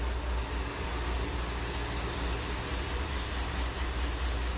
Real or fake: real